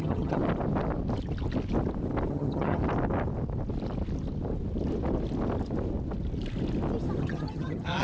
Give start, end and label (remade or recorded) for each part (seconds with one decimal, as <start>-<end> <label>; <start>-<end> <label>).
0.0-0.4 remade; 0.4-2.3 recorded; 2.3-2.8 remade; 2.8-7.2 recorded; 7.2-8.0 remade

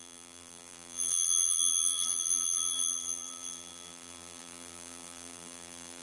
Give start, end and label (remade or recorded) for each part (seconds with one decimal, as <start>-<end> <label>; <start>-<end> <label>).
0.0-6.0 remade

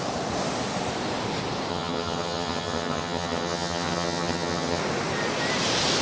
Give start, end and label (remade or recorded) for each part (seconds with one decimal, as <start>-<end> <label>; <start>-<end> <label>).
0.0-1.7 recorded; 1.7-4.8 remade; 4.8-6.0 recorded

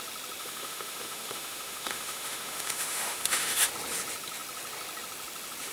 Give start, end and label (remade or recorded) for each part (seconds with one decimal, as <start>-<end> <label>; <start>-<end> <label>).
0.0-0.4 recorded; 0.4-3.7 remade; 3.7-5.7 recorded